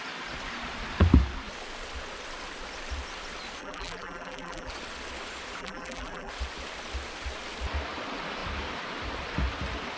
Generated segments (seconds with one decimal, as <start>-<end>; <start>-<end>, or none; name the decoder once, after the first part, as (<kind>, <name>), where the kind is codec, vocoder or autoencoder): 3.6-4.7 (vocoder, BigVGAN v2); 5.6-6.3